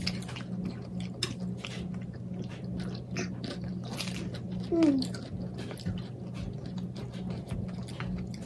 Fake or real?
real